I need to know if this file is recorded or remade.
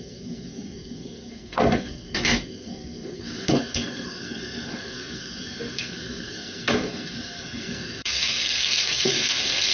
remade